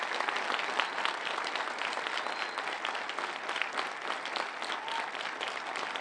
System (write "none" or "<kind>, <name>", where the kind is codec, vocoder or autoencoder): none